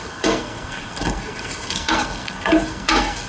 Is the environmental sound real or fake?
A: fake